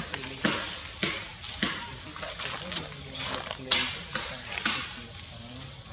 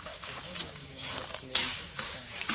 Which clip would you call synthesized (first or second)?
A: second